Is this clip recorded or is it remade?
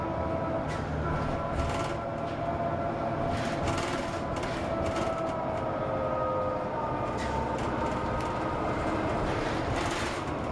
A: recorded